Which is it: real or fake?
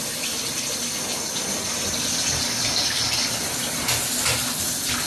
real